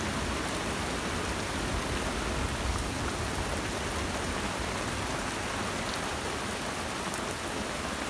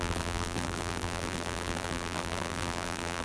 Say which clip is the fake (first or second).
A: second